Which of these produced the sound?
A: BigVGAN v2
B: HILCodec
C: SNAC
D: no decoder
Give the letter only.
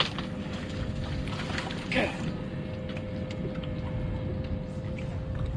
D